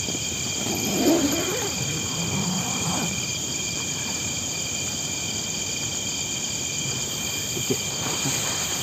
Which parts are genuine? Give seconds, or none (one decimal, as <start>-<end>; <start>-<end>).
0.0-3.3; 4.6-8.8